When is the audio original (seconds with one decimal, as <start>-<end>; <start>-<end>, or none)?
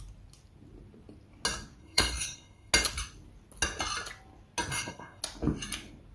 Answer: 0.0-1.8; 2.7-4.7; 5.2-6.1